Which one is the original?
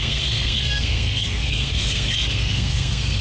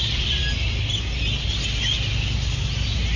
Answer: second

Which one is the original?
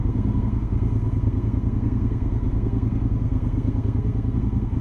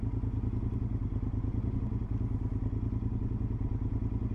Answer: second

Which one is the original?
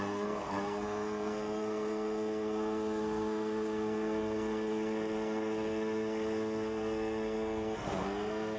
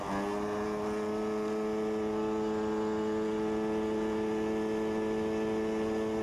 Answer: second